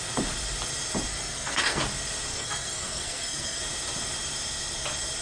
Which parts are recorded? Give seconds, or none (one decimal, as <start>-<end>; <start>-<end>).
0.0-1.1; 1.8-2.3; 3.6-5.2